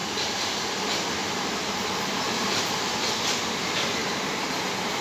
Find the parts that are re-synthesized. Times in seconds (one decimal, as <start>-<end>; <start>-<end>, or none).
0.0-0.7; 1.2-2.9; 4.0-4.6